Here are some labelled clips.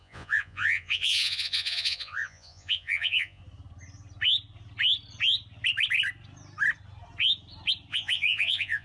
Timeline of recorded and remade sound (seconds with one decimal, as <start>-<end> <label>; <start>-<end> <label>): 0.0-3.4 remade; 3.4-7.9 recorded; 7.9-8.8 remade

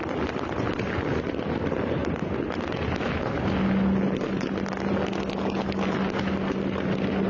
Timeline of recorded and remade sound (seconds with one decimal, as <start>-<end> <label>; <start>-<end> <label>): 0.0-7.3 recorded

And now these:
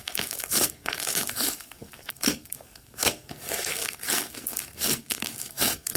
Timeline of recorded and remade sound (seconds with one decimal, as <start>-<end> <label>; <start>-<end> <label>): 0.0-6.0 remade